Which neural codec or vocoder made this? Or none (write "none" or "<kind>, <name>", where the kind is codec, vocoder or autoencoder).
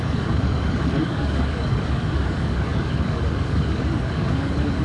codec, DAC